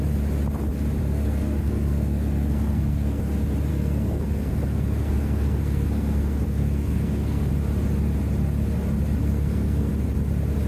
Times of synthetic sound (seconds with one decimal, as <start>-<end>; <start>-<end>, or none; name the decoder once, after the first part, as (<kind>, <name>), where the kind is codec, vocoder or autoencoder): 1.0-3.2 (codec, SNAC); 3.7-7.5; 9.2-9.9

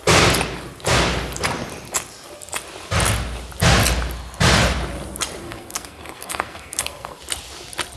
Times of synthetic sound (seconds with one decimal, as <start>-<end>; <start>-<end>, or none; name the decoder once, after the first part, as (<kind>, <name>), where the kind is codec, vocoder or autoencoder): 5.4-7.2 (codec, SNAC)

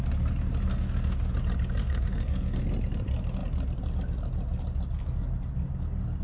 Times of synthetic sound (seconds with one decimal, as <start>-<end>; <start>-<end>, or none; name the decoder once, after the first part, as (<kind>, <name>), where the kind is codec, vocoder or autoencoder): 0.7-1.3 (codec, SNAC); 1.8-2.6

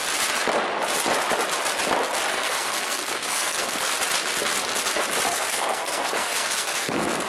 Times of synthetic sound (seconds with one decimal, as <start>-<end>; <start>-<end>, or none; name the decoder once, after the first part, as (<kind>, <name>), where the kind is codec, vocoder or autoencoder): 2.3-3.9 (codec, SNAC); 5.3-7.3

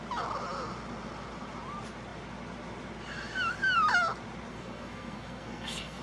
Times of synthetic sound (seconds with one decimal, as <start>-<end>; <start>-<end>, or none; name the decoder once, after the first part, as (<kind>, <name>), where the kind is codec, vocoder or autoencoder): 4.5-6.0 (codec, SNAC)